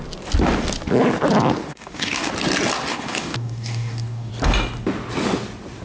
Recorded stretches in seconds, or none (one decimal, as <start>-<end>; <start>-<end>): 0.0-1.7; 2.3-2.9; 4.3-5.8

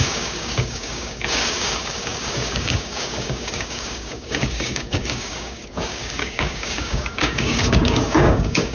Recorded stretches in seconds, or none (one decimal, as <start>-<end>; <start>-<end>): none

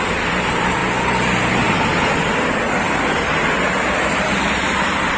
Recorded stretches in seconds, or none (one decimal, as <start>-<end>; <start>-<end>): 0.0-5.2